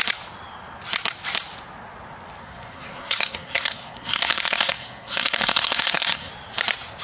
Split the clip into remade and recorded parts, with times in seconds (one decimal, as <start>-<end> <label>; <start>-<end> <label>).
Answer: 0.0-2.4 recorded; 2.4-6.3 remade; 6.3-7.0 recorded